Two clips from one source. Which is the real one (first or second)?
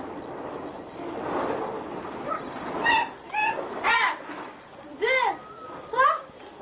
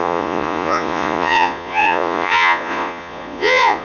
first